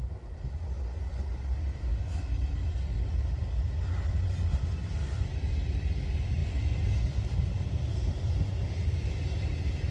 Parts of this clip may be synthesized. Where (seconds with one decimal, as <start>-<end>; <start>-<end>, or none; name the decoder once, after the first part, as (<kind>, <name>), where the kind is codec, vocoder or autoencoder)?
none